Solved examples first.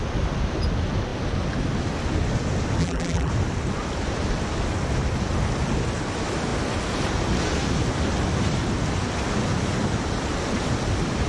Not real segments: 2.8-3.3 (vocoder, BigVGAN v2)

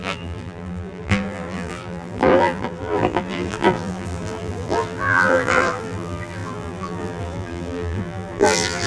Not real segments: 0.0-8.9 (vocoder, BigVGAN v2)